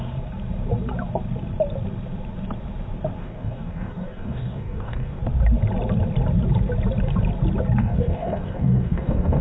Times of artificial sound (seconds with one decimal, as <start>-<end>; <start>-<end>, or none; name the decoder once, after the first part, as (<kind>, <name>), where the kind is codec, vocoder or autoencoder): 3.2-5.2 (codec, DAC); 7.8-9.4